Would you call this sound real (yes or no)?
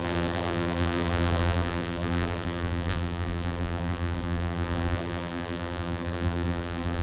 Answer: no